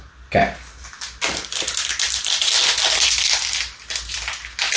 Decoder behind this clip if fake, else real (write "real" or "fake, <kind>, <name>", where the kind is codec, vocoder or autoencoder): real